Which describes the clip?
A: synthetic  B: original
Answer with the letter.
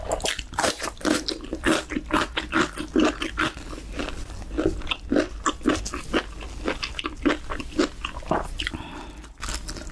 B